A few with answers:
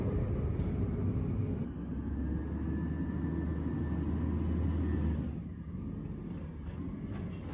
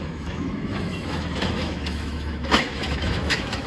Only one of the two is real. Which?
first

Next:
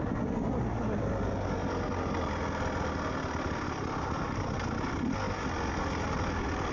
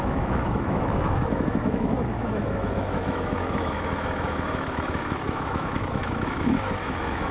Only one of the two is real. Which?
first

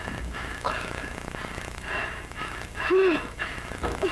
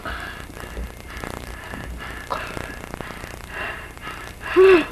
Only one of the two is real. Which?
second